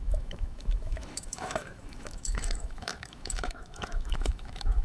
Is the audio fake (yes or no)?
yes